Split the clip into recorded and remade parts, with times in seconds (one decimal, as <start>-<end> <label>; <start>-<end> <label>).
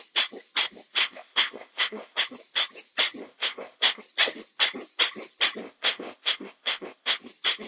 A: 0.0-1.0 recorded; 1.0-2.2 remade; 2.2-3.2 recorded; 3.2-4.0 remade; 4.0-5.6 recorded; 5.6-7.2 remade; 7.2-7.7 recorded